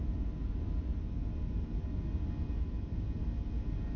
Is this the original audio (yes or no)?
yes